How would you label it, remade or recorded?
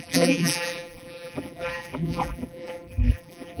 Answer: remade